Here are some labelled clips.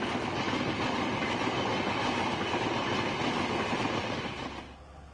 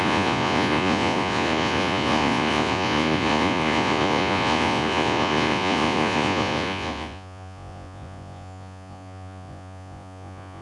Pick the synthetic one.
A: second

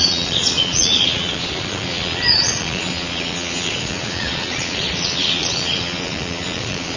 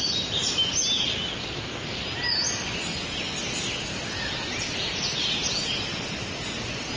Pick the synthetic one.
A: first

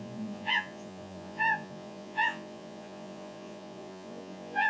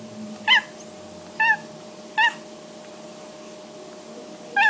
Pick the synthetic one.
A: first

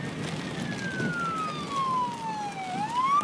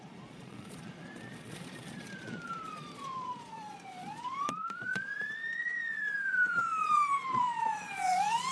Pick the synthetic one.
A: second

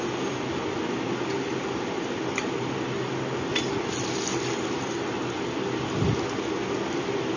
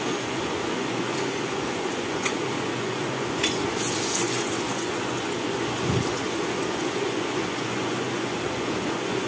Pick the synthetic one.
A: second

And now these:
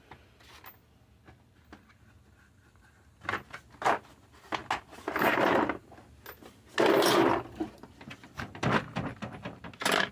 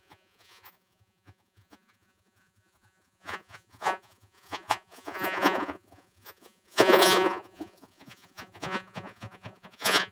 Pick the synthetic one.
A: second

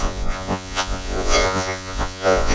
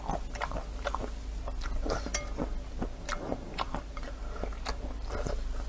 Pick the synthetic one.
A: first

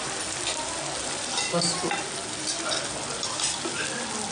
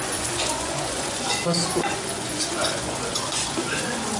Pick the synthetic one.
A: second